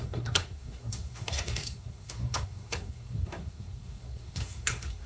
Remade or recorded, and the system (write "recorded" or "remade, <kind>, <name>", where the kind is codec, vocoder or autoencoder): remade, codec, SNAC